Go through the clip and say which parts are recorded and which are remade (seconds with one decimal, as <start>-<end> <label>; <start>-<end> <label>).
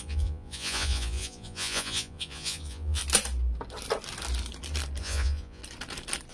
0.0-3.0 remade; 3.0-5.0 recorded; 5.0-5.6 remade; 5.6-6.3 recorded